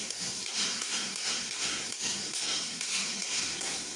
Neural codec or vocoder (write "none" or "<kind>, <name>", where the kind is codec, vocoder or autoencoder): codec, SNAC